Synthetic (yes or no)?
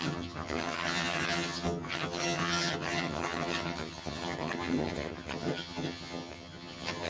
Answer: yes